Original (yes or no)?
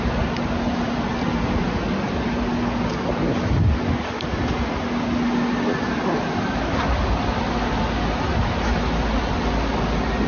yes